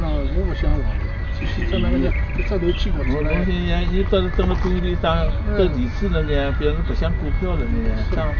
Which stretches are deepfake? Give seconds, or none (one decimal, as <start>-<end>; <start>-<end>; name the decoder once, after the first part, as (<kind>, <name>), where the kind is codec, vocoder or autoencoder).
none